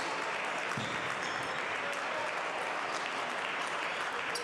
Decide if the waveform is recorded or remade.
recorded